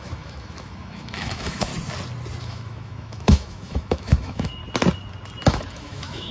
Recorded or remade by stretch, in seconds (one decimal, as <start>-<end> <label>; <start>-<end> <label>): 0.0-1.7 remade; 1.7-2.4 recorded; 2.4-4.6 remade; 4.6-5.5 recorded; 5.5-6.3 remade